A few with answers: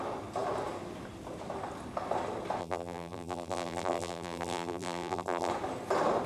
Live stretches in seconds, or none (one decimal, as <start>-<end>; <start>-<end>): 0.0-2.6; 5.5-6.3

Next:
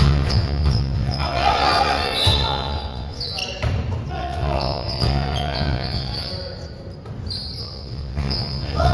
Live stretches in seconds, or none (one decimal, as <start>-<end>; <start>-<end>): 3.4-4.1; 6.3-7.6

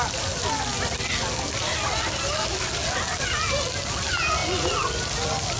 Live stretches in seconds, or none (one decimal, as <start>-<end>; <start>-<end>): 0.0-5.6

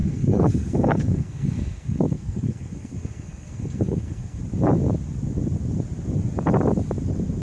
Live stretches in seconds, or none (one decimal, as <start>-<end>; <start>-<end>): 4.4-7.4